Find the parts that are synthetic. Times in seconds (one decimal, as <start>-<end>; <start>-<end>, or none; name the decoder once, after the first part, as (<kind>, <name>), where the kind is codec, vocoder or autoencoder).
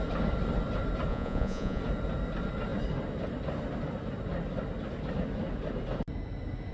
1.1-1.8 (vocoder, Vocos)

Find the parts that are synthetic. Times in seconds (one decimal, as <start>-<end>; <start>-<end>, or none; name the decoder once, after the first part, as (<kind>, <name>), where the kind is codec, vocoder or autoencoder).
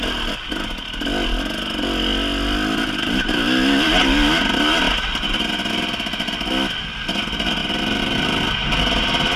none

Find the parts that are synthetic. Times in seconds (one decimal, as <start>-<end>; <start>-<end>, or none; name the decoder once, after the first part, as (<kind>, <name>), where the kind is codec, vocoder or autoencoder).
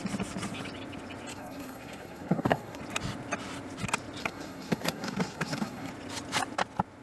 1.3-2.8 (codec, SNAC); 4.2-5.9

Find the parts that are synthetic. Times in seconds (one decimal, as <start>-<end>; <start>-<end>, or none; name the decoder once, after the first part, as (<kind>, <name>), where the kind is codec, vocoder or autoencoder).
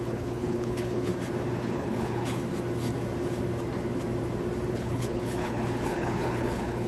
0.0-1.1 (codec, HILCodec); 1.6-2.4; 4.7-6.9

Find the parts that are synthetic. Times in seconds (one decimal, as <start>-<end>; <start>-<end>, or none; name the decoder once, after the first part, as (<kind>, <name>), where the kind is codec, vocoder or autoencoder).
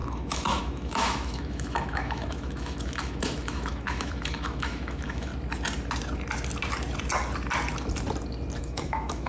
0.0-5.3 (autoencoder, DAC-VAE); 8.6-9.3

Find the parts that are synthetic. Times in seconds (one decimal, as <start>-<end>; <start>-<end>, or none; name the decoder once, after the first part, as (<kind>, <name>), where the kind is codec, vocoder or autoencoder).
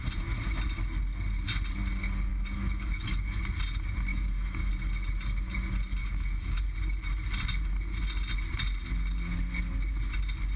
2.3-3.4 (autoencoder, DAC-VAE); 4.1-4.7; 6.0-6.6